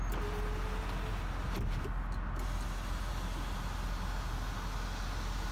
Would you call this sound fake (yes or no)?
no